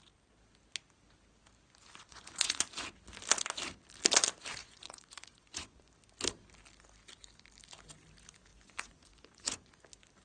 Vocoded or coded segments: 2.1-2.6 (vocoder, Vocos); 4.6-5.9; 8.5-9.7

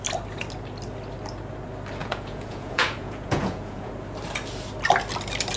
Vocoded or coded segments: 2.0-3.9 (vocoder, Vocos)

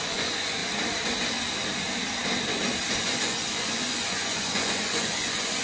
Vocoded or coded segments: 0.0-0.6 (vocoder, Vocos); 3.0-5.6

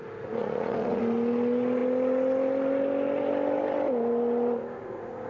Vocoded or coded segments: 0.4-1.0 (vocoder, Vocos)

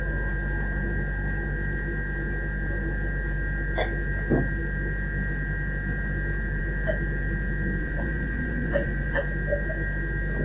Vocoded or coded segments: 7.8-9.2 (vocoder, Vocos)